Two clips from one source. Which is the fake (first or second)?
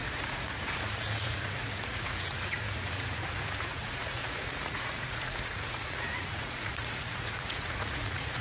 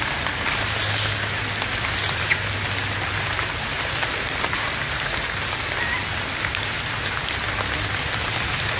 first